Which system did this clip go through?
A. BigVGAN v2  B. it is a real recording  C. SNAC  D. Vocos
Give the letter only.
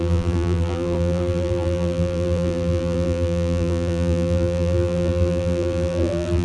A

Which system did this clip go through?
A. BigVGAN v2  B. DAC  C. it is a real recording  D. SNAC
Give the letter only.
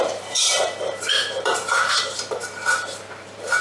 A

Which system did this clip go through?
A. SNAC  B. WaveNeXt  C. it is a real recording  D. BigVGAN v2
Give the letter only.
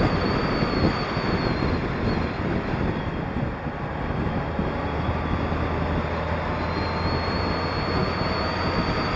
C